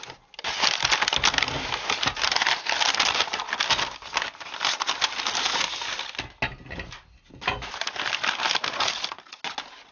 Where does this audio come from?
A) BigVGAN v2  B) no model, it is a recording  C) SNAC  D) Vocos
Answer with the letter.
B